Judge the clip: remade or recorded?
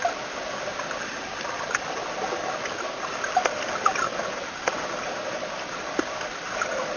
recorded